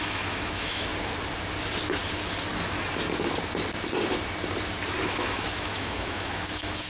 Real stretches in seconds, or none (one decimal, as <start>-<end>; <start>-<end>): 0.9-5.0